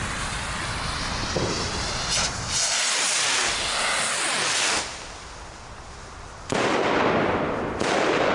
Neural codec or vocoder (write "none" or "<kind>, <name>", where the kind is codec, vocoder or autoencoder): none